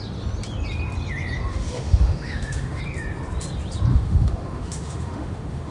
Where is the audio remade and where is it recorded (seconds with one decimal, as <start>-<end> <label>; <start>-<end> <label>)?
0.0-1.5 recorded; 1.5-2.8 remade; 2.8-3.9 recorded; 3.9-5.7 remade